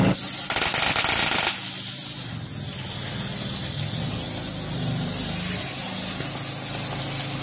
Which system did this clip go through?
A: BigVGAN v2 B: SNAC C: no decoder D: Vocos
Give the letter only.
C